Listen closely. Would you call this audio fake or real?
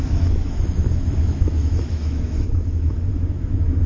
fake